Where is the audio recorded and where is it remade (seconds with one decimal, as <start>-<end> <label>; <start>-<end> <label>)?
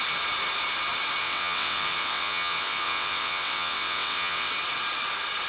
0.0-1.2 recorded; 1.2-4.5 remade; 4.5-5.5 recorded